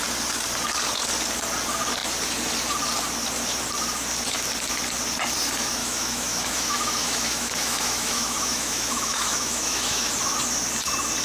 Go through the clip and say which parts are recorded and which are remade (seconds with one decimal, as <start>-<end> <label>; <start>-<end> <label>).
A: 0.0-5.8 recorded; 5.8-10.1 remade; 10.1-11.2 recorded